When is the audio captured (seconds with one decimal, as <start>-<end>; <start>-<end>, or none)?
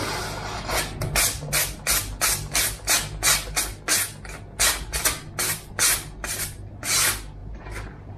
0.0-7.4